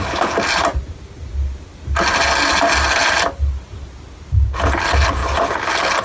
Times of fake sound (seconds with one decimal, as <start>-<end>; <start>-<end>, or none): none